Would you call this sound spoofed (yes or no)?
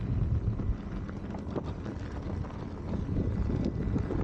no